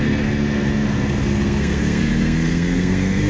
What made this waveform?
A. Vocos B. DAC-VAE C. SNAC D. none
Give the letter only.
C